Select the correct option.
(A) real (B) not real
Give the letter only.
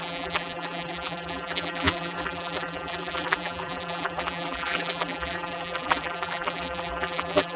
B